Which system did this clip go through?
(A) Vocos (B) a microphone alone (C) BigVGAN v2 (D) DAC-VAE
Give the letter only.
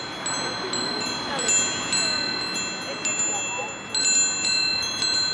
B